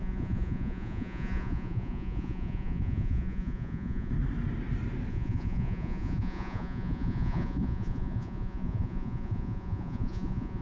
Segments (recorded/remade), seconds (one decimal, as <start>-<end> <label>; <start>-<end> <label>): 0.0-4.1 remade; 4.1-5.1 recorded; 5.1-10.6 remade